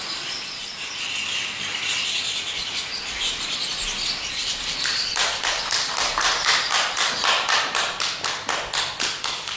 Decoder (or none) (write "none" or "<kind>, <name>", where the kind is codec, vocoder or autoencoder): none